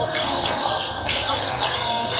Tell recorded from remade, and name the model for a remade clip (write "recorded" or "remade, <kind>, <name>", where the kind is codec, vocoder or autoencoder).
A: remade, codec, SNAC